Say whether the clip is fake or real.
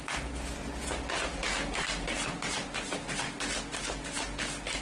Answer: real